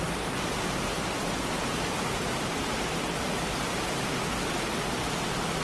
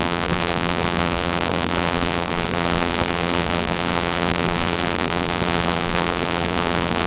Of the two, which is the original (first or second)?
first